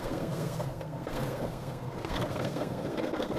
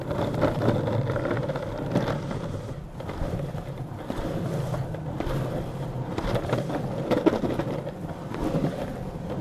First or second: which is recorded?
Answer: second